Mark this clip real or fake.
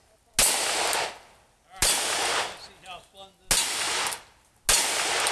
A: real